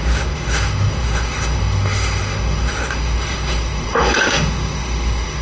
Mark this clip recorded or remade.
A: remade